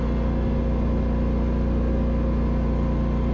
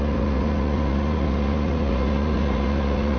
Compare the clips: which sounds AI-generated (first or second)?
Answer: second